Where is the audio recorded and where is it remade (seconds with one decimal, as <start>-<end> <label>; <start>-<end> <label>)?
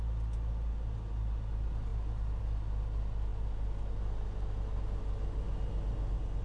0.0-6.4 recorded